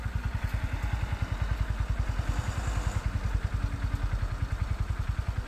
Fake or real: real